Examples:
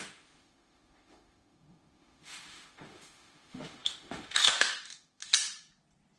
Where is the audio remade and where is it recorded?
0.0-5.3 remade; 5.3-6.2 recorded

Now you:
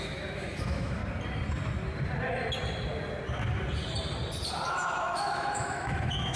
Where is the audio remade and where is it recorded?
0.0-1.0 remade; 1.0-4.7 recorded; 4.7-6.4 remade

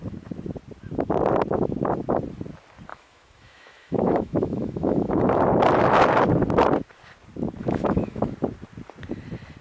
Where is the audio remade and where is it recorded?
0.0-2.9 recorded; 2.9-5.4 remade; 5.4-7.6 recorded; 7.6-8.2 remade; 8.2-9.6 recorded

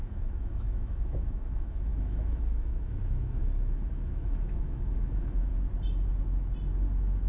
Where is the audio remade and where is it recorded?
0.0-5.5 remade; 5.5-7.3 recorded

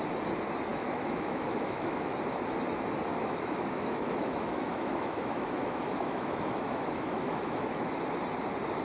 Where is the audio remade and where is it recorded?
0.0-0.7 recorded; 0.7-2.1 remade; 2.1-3.1 recorded; 3.1-8.0 remade; 8.0-8.8 recorded

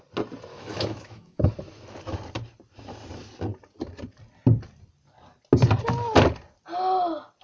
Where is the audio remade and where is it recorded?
0.0-0.5 recorded; 0.5-1.5 remade; 1.5-7.4 recorded

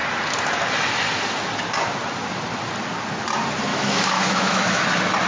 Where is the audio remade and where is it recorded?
0.0-3.7 recorded; 3.7-4.8 remade; 4.8-5.3 recorded

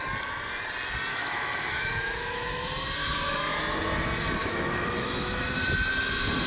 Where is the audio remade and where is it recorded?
0.0-1.1 recorded; 1.1-2.6 remade; 2.6-3.0 recorded; 3.0-3.6 remade; 3.6-4.4 recorded; 4.4-5.4 remade; 5.4-6.5 recorded